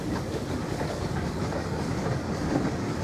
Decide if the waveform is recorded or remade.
remade